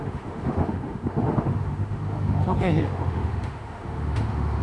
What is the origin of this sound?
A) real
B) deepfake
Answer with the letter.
B